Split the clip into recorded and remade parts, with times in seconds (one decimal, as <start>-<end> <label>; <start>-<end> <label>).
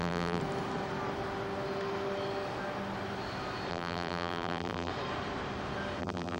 0.0-0.4 remade; 0.4-3.7 recorded; 3.7-4.9 remade; 4.9-6.0 recorded; 6.0-6.4 remade